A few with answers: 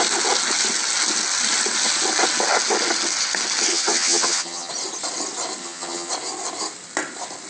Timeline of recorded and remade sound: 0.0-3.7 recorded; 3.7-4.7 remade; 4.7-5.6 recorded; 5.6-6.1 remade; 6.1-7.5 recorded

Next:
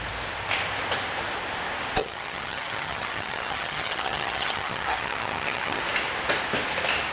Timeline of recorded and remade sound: 0.0-2.0 recorded; 2.0-5.8 remade; 5.8-7.1 recorded

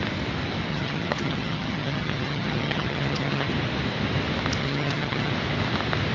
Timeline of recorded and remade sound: 0.0-0.7 recorded; 0.7-3.5 remade; 3.5-4.6 recorded; 4.6-5.3 remade; 5.3-6.1 recorded

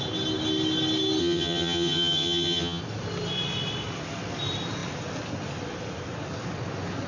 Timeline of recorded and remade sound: 0.0-1.2 recorded; 1.2-2.8 remade; 2.8-7.1 recorded

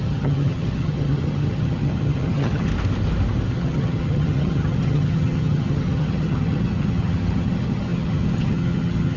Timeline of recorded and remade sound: 0.0-2.7 remade; 2.7-3.5 recorded; 3.5-9.2 remade

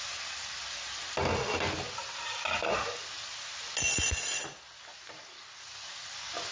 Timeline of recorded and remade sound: 0.0-6.5 recorded

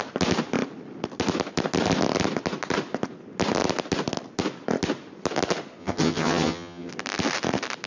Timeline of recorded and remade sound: 0.0-5.8 recorded; 5.8-6.9 remade; 6.9-7.9 recorded

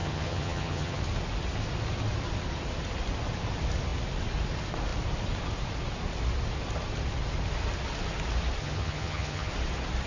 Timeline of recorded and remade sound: 0.0-1.0 remade; 1.0-8.6 recorded; 8.6-9.5 remade; 9.5-10.1 recorded